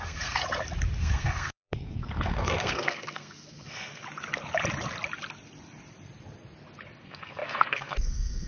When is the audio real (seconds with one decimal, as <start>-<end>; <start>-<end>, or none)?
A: 0.4-1.0; 4.0-7.0